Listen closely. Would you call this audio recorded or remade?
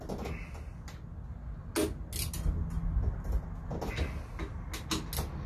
recorded